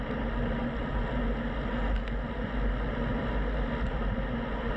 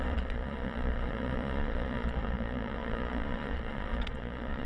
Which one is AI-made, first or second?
second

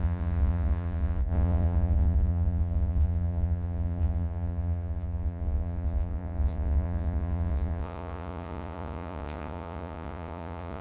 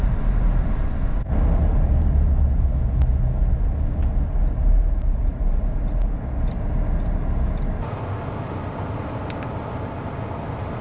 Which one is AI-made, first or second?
first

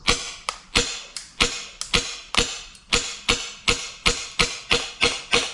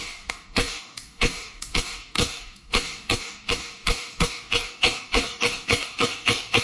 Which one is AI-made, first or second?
second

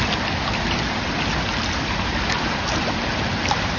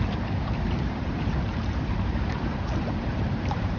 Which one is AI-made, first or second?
second